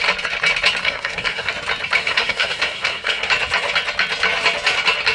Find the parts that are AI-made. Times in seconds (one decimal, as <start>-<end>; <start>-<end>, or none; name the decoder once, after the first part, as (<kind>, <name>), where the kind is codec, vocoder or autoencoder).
0.8-1.5 (codec, SNAC); 2.0-3.3